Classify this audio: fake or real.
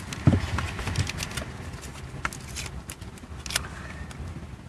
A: real